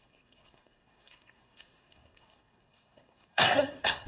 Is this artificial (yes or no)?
yes